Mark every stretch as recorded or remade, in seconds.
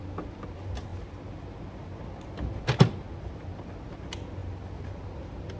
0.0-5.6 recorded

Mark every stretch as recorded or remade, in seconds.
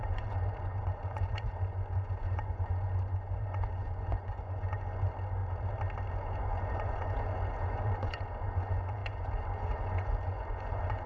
0.0-5.4 remade; 5.4-6.1 recorded; 6.1-11.1 remade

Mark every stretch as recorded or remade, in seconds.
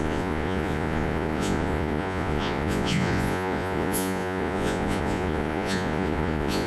0.0-6.7 remade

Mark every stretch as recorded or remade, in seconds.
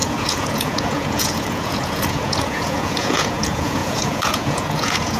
0.0-5.2 remade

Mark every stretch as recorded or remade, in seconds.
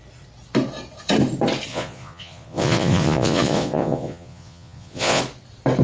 0.0-1.7 recorded; 1.7-5.2 remade; 5.2-5.8 recorded